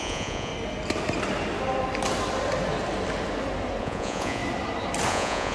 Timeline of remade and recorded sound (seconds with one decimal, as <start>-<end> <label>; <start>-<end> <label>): 0.0-0.5 remade; 0.5-3.8 recorded; 3.8-4.4 remade; 4.4-5.1 recorded; 5.1-5.5 remade